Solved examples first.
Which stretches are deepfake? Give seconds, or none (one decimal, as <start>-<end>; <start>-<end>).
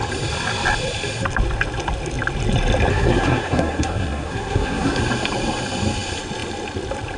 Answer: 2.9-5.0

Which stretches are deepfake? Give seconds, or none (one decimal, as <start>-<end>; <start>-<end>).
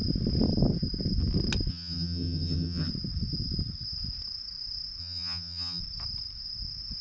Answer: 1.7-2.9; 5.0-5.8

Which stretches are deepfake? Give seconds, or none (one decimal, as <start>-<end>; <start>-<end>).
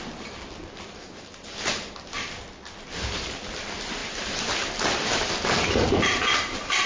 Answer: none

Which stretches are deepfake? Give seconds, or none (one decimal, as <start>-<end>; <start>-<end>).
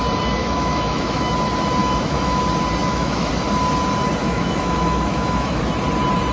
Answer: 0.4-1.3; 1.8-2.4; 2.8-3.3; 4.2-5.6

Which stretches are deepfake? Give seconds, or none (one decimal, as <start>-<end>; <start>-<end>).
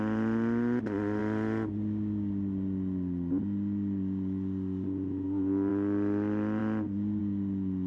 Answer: none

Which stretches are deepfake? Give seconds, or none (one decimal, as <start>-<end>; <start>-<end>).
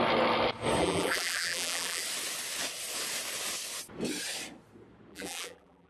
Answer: 0.8-2.0; 5.1-5.9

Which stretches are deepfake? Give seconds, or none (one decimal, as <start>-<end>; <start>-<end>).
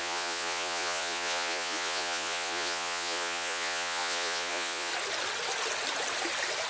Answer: 0.0-4.9